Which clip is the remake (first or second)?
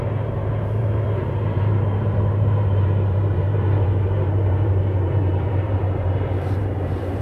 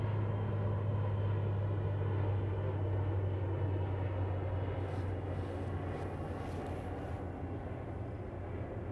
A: first